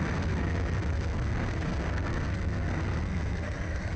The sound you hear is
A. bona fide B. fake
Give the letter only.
B